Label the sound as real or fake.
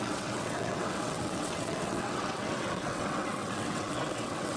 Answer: fake